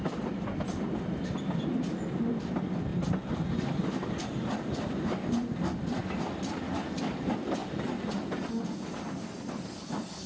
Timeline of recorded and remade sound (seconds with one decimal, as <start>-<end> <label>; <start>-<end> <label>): 0.0-10.3 recorded